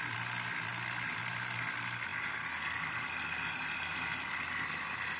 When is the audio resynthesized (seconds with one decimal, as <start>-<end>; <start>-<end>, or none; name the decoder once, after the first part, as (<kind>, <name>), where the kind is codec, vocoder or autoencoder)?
0.7-1.5 (vocoder, BigVGAN v2); 2.1-5.2